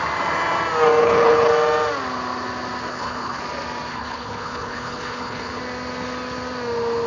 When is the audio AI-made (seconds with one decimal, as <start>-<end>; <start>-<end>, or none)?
1.0-1.5; 2.9-3.4; 3.9-5.6